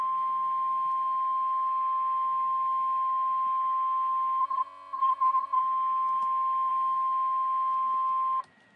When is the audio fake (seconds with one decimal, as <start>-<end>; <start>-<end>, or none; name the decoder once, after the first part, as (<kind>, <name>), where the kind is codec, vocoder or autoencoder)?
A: 4.4-5.6 (codec, SNAC)